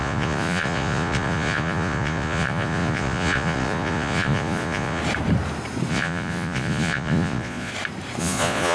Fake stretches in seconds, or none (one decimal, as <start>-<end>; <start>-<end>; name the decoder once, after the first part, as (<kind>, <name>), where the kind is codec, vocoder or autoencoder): 0.0-5.0 (vocoder, Vocos); 5.9-7.7; 8.2-8.7